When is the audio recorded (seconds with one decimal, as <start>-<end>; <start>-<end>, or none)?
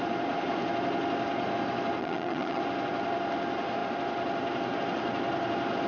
0.0-2.0; 2.6-5.9